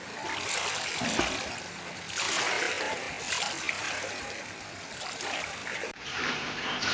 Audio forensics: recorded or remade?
recorded